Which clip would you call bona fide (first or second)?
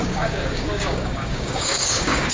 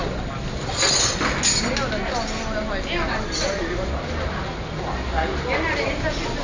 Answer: second